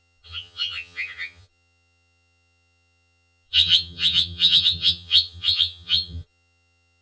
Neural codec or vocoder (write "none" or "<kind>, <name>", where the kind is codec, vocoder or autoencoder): vocoder, HiFi-GAN